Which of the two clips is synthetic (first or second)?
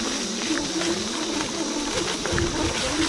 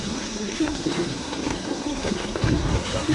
second